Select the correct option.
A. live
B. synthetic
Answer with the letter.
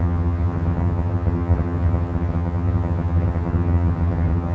B